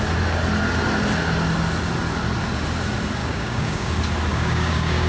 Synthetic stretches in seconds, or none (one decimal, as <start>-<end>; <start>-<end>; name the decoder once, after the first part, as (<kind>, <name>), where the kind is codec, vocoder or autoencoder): 3.2-3.9 (codec, DAC); 4.3-5.1

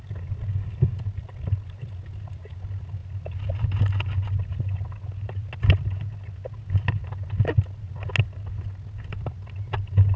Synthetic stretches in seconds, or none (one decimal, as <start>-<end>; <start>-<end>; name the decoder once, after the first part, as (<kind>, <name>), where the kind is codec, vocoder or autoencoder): none